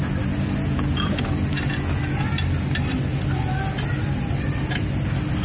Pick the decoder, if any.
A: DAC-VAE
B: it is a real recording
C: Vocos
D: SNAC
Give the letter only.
B